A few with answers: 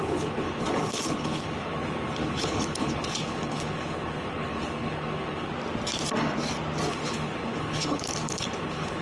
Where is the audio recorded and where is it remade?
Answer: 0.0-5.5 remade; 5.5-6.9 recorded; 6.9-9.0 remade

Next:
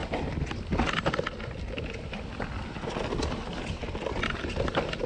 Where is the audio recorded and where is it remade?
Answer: 0.0-5.1 recorded

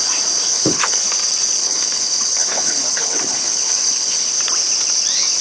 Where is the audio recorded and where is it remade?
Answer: 0.0-0.5 recorded; 0.5-1.0 remade; 1.0-1.6 recorded; 1.6-4.3 remade; 4.3-5.4 recorded

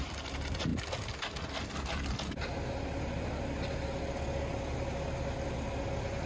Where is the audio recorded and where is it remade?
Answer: 0.0-6.3 recorded

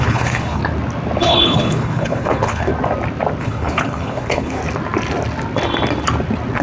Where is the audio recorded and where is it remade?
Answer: 0.0-0.6 remade; 0.6-1.2 recorded; 1.2-2.7 remade; 2.7-3.4 recorded; 3.4-4.6 remade; 4.6-6.6 recorded

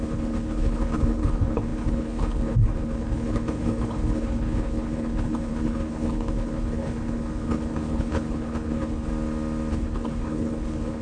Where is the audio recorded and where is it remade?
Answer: 0.0-9.1 remade; 9.1-9.7 recorded; 9.7-11.0 remade

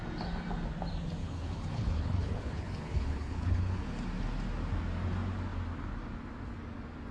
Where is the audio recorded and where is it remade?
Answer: 0.0-1.2 recorded; 1.2-3.9 remade; 3.9-7.1 recorded

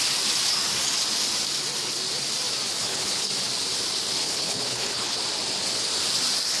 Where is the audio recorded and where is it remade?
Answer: 0.0-2.8 recorded; 2.8-3.3 remade; 3.3-4.2 recorded; 4.2-5.2 remade; 5.2-6.6 recorded